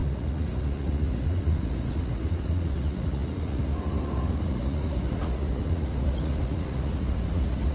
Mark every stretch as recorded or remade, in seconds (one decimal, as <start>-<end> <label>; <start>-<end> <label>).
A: 0.0-7.7 remade